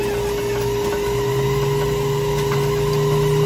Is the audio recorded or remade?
recorded